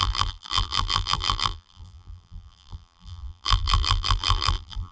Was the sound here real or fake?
fake